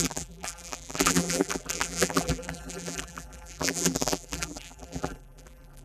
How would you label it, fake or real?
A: fake